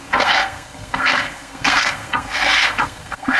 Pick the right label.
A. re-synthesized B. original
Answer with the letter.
A